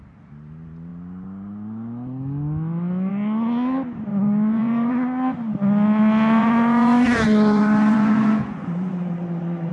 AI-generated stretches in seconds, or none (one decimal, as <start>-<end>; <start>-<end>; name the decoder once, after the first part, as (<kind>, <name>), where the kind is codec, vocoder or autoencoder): 4.1-4.9 (vocoder, Vocos); 6.4-9.7